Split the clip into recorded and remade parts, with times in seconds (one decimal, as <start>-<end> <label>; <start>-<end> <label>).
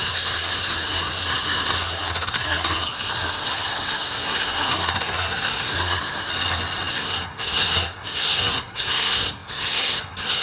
0.0-6.3 remade; 6.3-6.9 recorded; 6.9-10.4 remade